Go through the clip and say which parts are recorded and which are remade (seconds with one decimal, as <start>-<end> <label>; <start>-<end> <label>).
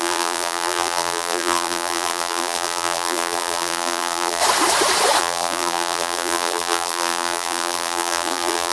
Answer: 0.0-4.4 remade; 4.4-5.2 recorded; 5.2-8.7 remade